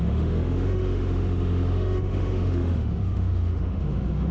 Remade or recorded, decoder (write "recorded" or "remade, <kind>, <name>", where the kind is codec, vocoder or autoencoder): remade, autoencoder, DAC-VAE